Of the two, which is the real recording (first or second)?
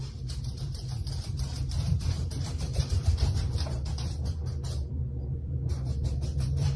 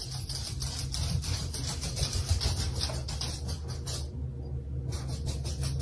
second